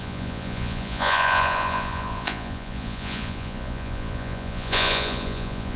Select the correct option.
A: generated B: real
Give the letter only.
A